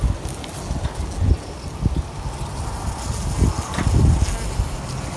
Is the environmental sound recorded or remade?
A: recorded